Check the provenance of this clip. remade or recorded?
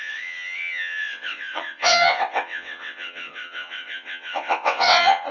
remade